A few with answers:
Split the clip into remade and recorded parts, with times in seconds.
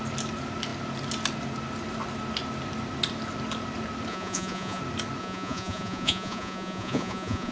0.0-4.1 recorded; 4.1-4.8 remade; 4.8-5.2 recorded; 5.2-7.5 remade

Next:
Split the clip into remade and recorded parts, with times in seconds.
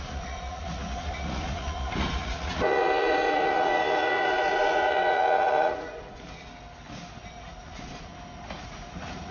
0.0-6.5 remade; 6.5-7.3 recorded; 7.3-8.1 remade; 8.1-8.6 recorded; 8.6-9.3 remade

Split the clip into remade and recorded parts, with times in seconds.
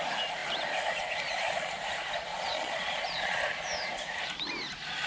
0.0-2.3 recorded; 2.3-3.4 remade; 3.4-5.1 recorded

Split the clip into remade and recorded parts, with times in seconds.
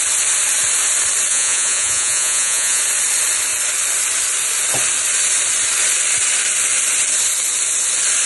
0.0-1.3 recorded; 1.3-2.8 remade; 2.8-8.3 recorded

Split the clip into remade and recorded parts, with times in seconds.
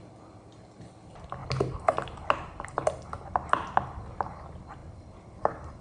0.0-5.8 recorded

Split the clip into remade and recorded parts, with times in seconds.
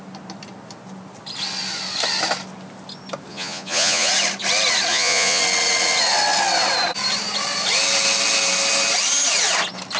0.0-3.3 recorded; 3.3-4.1 remade; 4.1-4.9 recorded; 4.9-5.4 remade; 5.4-10.0 recorded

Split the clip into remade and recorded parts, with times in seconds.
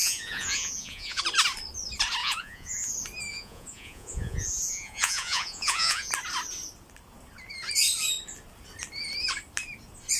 0.0-1.2 remade; 1.2-2.2 recorded; 2.2-2.9 remade; 2.9-3.3 recorded; 3.3-6.1 remade; 6.1-10.2 recorded